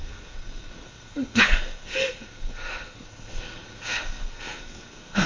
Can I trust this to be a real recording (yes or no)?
no